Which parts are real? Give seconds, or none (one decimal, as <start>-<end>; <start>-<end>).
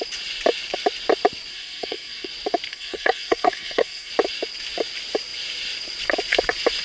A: 0.0-1.5; 2.3-2.7; 4.1-6.8